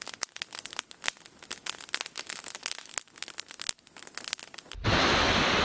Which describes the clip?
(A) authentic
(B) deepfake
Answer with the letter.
A